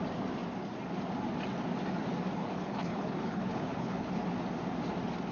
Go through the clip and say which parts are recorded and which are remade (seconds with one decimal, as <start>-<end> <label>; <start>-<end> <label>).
0.0-2.4 recorded; 2.4-4.1 remade; 4.1-5.3 recorded

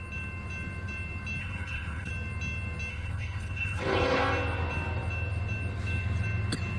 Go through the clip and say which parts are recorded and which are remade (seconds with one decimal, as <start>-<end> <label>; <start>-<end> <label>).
0.0-1.4 recorded; 1.4-2.1 remade; 2.1-2.9 recorded; 2.9-4.2 remade; 4.2-6.8 recorded

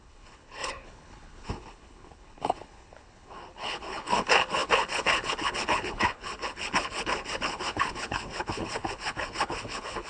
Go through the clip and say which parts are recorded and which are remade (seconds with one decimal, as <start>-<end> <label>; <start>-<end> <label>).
0.0-10.1 remade